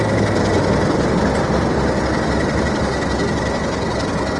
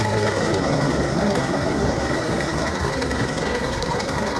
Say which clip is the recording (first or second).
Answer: first